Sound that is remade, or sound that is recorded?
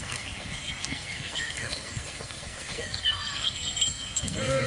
remade